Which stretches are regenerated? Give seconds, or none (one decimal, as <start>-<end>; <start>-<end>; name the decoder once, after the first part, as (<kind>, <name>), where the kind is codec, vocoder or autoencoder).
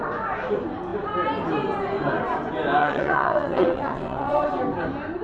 2.8-4.5 (vocoder, WaveNeXt)